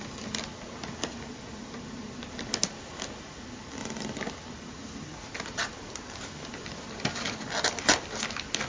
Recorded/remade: recorded